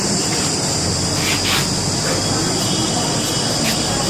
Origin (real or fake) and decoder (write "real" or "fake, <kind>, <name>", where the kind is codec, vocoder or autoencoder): real